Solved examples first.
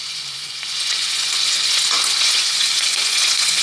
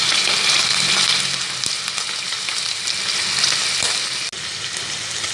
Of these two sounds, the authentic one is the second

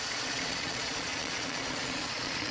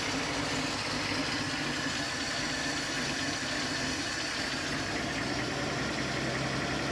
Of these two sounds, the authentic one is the second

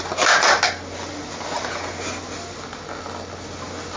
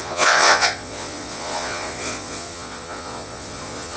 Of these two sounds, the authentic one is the first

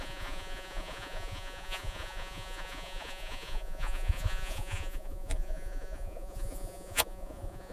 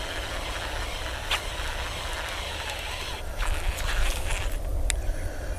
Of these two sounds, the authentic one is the second